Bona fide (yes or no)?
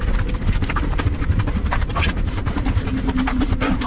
no